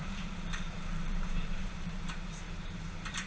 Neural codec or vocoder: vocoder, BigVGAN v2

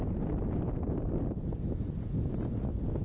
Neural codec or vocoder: none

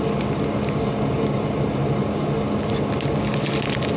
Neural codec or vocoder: none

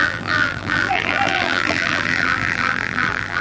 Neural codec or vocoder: vocoder, BigVGAN v2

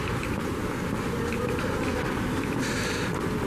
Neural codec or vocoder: none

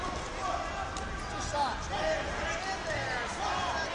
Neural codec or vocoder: none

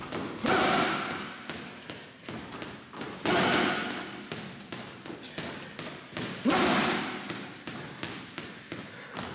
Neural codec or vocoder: none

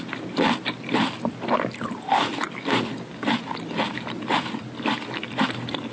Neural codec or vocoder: vocoder, BigVGAN v2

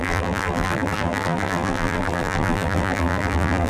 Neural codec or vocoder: vocoder, BigVGAN v2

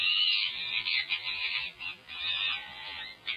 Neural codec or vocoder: vocoder, BigVGAN v2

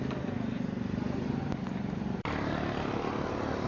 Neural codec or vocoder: none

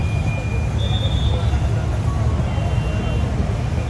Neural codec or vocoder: none